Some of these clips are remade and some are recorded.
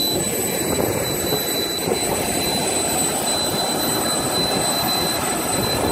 recorded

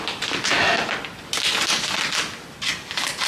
recorded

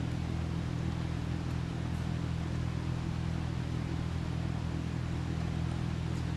recorded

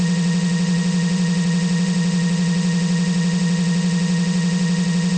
remade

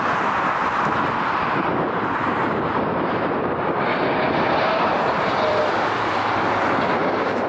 remade